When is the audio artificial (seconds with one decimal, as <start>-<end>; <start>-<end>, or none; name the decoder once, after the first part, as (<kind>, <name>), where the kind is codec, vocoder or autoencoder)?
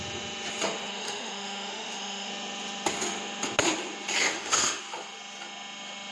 0.9-2.3 (autoencoder, DAC-VAE); 4.2-4.8